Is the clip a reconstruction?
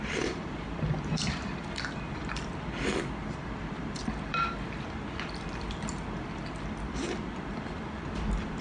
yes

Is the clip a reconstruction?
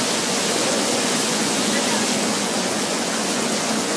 yes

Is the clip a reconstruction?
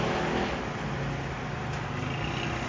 no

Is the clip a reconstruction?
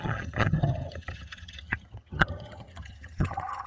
yes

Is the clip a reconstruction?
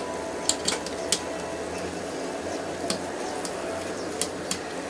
no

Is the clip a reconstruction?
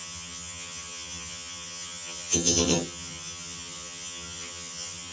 yes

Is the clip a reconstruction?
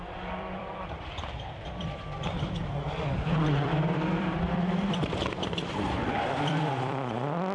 yes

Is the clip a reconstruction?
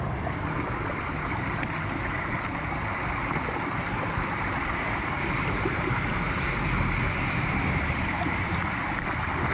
no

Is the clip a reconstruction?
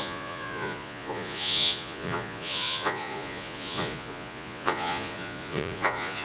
yes